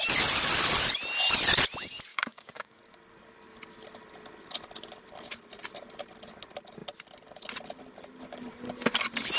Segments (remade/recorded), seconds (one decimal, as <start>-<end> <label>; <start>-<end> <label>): 0.0-2.1 recorded; 2.1-2.8 remade; 2.8-9.4 recorded